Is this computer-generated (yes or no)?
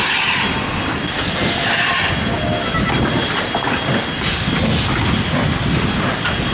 no